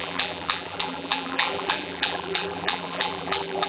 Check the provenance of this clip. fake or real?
fake